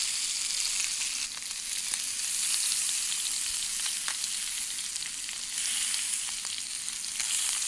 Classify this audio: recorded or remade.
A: recorded